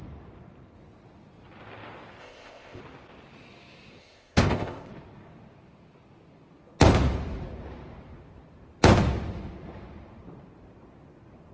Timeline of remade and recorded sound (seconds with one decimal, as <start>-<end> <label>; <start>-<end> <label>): 0.0-2.2 recorded; 2.2-2.8 remade; 2.8-4.0 recorded; 4.0-4.9 remade; 4.9-11.5 recorded